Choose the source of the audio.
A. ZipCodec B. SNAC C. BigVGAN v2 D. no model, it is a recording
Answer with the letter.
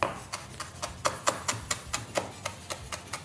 D